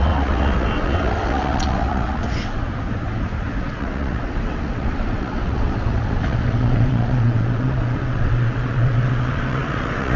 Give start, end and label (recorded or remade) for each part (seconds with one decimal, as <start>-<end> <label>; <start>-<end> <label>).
0.0-2.6 remade; 2.6-3.6 recorded; 3.6-10.2 remade